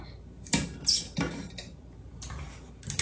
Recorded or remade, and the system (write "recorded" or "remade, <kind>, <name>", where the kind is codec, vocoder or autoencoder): recorded